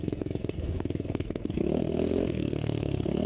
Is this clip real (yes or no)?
no